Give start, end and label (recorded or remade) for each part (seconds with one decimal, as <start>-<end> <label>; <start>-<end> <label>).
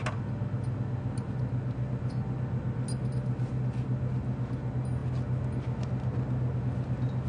0.0-7.3 recorded